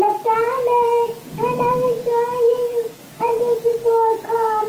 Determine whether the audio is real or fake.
fake